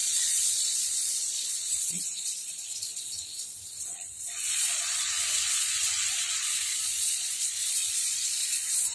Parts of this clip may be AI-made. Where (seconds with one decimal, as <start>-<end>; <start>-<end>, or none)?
0.0-8.9